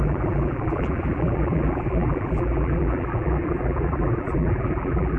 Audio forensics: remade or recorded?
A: remade